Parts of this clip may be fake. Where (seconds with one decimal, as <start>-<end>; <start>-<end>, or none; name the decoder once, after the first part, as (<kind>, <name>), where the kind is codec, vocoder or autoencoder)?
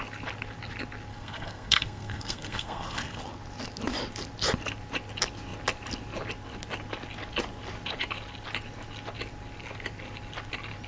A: 1.1-3.2 (codec, SNAC)